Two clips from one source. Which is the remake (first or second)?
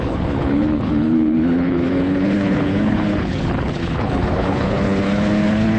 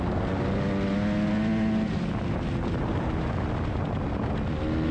first